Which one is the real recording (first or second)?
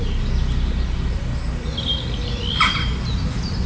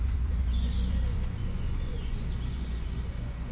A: first